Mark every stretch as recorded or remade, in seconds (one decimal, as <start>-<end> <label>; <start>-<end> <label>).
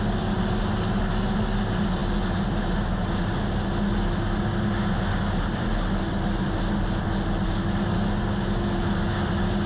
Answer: 0.0-9.7 recorded